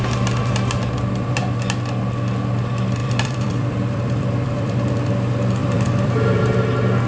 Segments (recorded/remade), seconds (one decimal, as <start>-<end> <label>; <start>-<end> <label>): 0.0-3.0 recorded; 3.0-5.1 remade; 5.1-5.6 recorded; 5.6-6.4 remade; 6.4-7.1 recorded